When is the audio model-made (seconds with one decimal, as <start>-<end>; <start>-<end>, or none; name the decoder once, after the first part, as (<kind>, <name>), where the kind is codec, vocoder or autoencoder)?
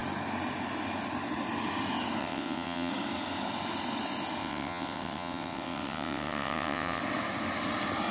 2.2-2.9 (vocoder, WaveNeXt); 4.4-7.0